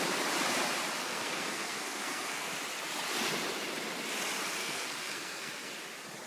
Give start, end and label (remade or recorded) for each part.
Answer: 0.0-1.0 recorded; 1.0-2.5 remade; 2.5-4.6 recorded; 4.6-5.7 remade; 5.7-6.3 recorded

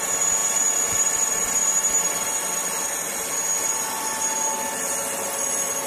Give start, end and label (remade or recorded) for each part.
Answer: 0.0-5.9 recorded

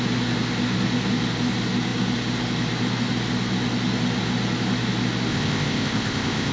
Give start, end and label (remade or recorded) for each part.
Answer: 0.0-5.3 recorded; 5.3-6.5 remade